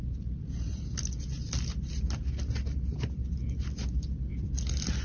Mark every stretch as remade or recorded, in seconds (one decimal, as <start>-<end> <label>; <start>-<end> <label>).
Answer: 0.0-0.9 remade; 0.9-2.9 recorded; 2.9-3.4 remade; 3.4-5.0 recorded